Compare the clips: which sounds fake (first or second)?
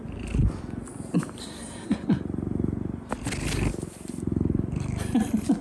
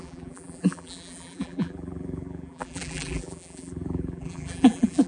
second